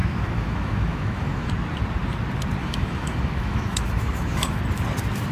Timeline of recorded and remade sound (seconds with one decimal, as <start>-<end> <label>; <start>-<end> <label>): 0.0-1.5 remade; 1.5-2.6 recorded; 2.6-4.6 remade; 4.6-5.3 recorded